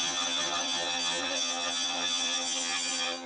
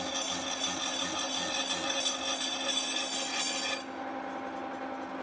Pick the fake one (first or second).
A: first